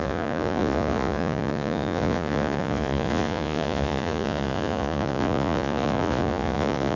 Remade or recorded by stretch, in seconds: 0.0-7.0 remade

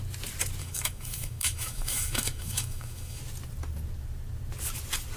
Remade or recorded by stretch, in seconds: 0.0-0.6 recorded; 0.6-3.2 remade; 3.2-5.2 recorded

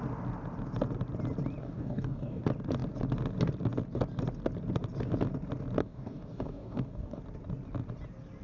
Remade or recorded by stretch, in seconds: 0.0-1.6 recorded; 1.6-2.4 remade; 2.4-5.8 recorded; 5.8-7.2 remade; 7.2-8.4 recorded

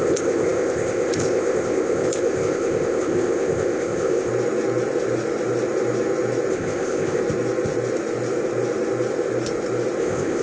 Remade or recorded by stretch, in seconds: 0.0-4.3 remade; 4.3-6.5 recorded; 6.5-7.2 remade; 7.2-10.0 recorded; 10.0-10.4 remade